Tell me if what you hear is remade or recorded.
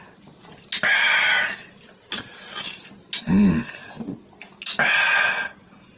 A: recorded